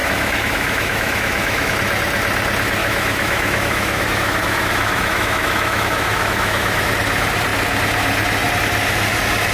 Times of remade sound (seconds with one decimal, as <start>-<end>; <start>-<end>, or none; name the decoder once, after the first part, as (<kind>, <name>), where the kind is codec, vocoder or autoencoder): 0.0-1.7 (autoencoder, DAC-VAE); 2.8-6.9